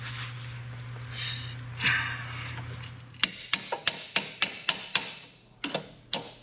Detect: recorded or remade recorded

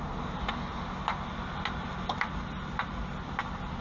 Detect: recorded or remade recorded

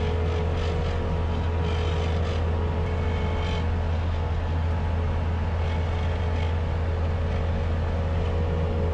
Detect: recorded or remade recorded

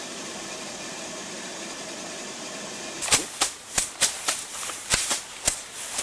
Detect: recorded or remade remade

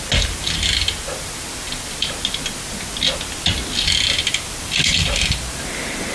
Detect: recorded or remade recorded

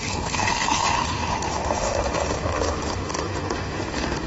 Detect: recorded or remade remade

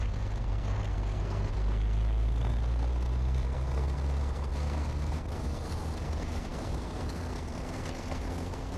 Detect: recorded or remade remade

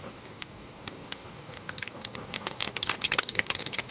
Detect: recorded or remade remade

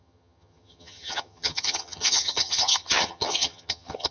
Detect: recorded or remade remade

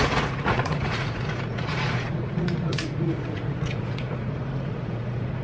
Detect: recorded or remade remade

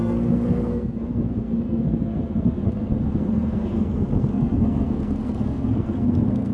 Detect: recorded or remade remade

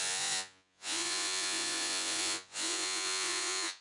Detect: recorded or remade remade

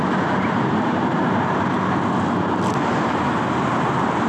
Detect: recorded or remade recorded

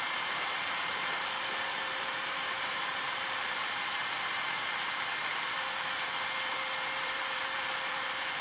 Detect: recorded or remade remade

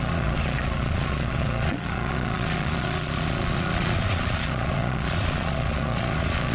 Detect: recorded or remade remade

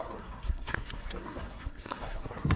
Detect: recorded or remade remade